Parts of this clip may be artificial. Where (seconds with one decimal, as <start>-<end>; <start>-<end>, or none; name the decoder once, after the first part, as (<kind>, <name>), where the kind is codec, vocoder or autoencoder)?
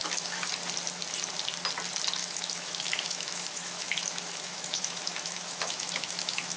0.0-0.5 (autoencoder, DAC-VAE); 2.2-6.6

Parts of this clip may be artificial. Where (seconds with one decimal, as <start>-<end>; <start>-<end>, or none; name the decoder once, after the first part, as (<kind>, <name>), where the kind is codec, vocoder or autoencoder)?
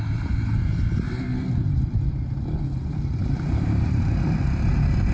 3.2-4.0 (vocoder, BigVGAN v2)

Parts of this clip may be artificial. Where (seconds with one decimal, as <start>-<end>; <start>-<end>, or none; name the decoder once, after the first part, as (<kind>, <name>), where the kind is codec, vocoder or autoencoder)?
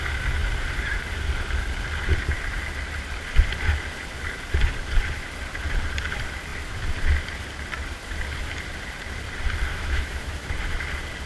9.7-10.5 (autoencoder, DAC-VAE)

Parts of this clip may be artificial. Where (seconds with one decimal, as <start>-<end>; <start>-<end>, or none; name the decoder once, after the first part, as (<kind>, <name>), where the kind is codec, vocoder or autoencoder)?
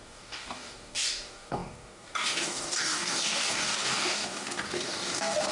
0.0-5.5 (codec, DAC)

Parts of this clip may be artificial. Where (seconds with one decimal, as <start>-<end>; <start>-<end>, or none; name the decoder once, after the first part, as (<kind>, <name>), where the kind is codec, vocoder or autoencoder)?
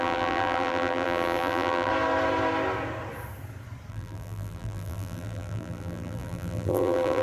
0.0-1.9 (vocoder, BigVGAN v2); 3.9-7.2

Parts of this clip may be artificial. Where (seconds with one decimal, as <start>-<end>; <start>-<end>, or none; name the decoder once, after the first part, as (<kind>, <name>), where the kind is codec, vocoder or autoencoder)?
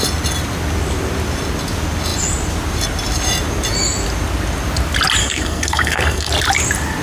5.2-6.3 (codec, SNAC)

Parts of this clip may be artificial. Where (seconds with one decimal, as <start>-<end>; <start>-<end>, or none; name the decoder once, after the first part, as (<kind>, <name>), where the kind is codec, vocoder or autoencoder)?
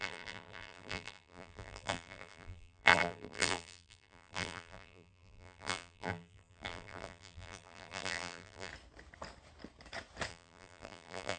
0.0-8.7 (vocoder, BigVGAN v2); 10.3-11.4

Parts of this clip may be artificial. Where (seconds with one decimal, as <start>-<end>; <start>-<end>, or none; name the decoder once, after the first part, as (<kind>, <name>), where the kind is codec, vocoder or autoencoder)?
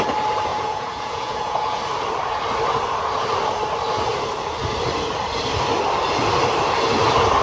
0.5-1.8 (vocoder, Vocos)